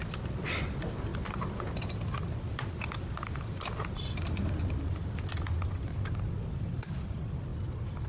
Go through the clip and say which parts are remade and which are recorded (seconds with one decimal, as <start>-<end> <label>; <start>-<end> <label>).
0.0-1.1 remade; 1.1-2.4 recorded; 2.4-5.9 remade; 5.9-6.5 recorded; 6.5-7.5 remade; 7.5-8.1 recorded